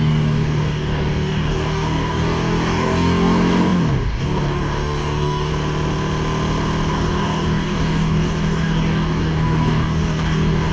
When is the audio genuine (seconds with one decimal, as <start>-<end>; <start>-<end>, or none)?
5.5-6.9